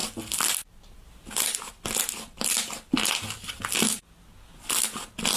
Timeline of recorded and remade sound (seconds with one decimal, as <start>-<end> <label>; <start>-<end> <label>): 0.0-5.4 recorded